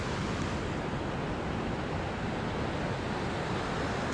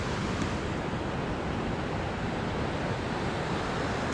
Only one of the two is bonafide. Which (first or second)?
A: first